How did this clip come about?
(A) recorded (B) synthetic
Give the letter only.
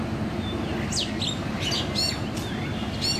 A